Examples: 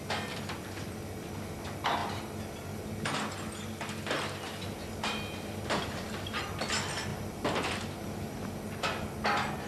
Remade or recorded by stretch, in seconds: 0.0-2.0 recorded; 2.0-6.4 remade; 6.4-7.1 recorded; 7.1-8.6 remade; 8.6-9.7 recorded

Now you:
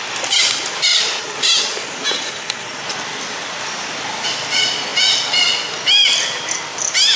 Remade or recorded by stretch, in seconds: 0.0-7.2 recorded

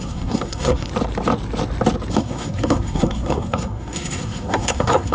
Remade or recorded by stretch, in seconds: 0.0-0.9 remade; 0.9-2.1 recorded; 2.1-5.1 remade

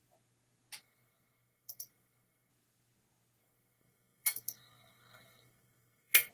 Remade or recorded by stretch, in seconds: 0.0-0.8 recorded; 0.8-2.5 remade; 2.5-3.4 recorded; 3.4-6.3 remade

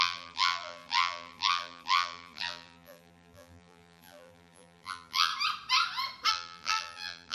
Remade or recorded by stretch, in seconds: 0.0-5.3 remade; 5.3-6.3 recorded; 6.3-7.3 remade

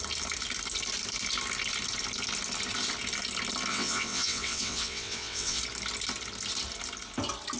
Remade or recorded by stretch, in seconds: 0.0-3.7 recorded; 3.7-5.6 remade; 5.6-7.6 recorded

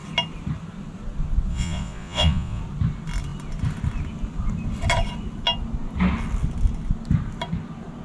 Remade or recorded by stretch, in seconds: 0.0-1.5 recorded; 1.5-2.6 remade; 2.6-8.0 recorded

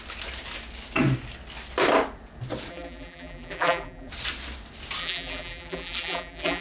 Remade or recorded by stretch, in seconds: 0.0-2.7 recorded; 2.7-4.1 remade; 4.1-5.0 recorded; 5.0-6.6 remade